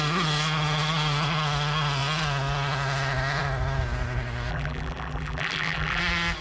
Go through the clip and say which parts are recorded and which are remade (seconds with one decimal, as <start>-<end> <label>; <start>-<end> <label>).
0.0-4.5 recorded; 4.5-6.0 remade; 6.0-6.4 recorded